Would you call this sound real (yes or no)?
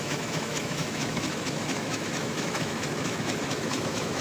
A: no